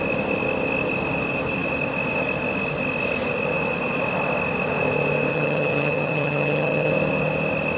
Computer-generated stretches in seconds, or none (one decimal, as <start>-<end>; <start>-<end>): 5.3-6.9